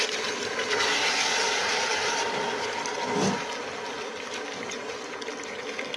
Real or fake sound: real